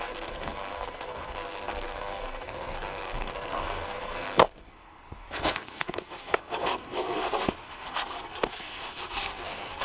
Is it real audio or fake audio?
fake